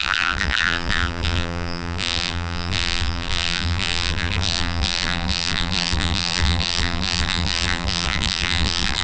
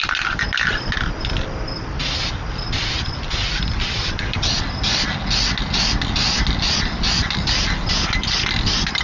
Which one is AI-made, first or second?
first